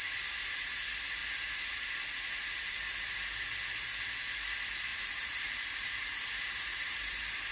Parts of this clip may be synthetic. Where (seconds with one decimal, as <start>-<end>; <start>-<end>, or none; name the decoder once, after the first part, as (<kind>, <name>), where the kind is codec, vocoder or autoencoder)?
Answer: 4.9-7.5 (vocoder, BigVGAN v2)